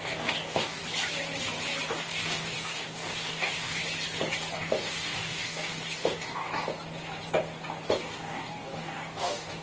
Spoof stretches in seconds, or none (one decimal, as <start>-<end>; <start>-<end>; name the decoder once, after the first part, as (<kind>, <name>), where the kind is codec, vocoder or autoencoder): 0.0-0.8 (codec, DAC); 1.9-3.8; 4.6-6.5; 7.9-9.6